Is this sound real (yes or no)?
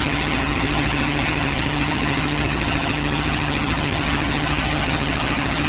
no